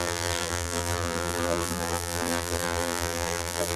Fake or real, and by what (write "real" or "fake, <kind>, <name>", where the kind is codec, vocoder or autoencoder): fake, vocoder, BigVGAN v2